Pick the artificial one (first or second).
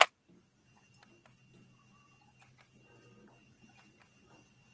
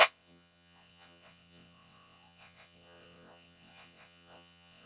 second